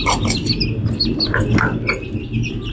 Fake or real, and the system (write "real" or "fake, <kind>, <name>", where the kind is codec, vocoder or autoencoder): real